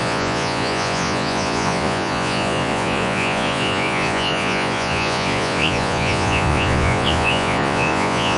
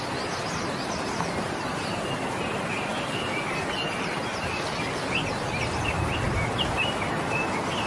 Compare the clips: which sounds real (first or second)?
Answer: second